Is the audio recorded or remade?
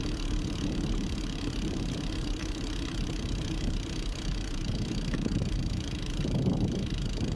remade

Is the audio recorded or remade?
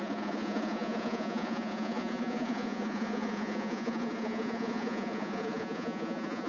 remade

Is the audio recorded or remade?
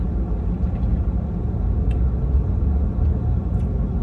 recorded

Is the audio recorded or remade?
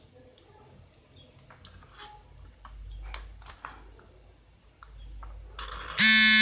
recorded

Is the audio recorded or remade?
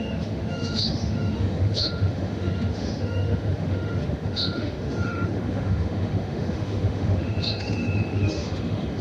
remade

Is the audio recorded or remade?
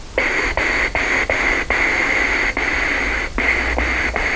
recorded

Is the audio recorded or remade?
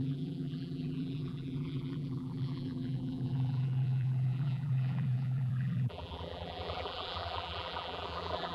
remade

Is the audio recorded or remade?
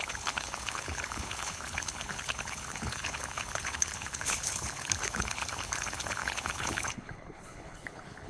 remade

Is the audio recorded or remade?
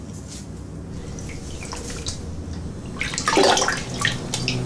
recorded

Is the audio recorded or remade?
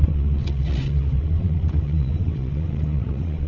remade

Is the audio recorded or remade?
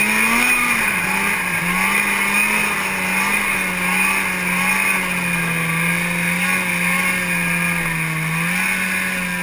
recorded